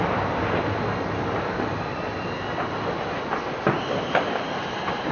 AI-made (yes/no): no